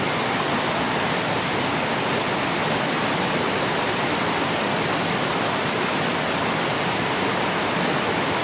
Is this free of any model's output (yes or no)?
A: yes